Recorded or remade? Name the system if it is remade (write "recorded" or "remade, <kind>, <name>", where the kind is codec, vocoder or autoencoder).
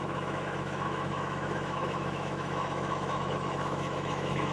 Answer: remade, autoencoder, DAC-VAE